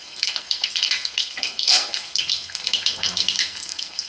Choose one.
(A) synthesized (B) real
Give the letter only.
A